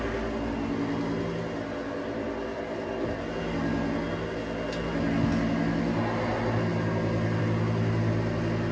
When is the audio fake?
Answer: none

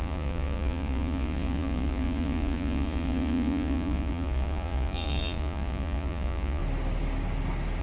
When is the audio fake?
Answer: 0.0-6.6

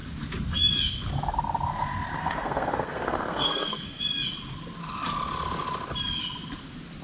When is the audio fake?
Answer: 2.2-4.0

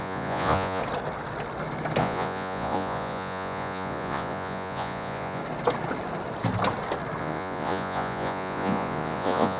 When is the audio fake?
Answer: 0.0-0.8; 2.0-5.4; 7.2-9.6

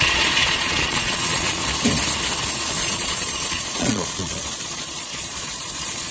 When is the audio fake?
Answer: 0.0-1.6; 2.8-6.1